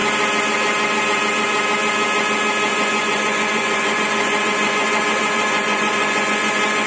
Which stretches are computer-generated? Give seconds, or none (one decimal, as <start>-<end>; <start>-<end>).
2.7-6.9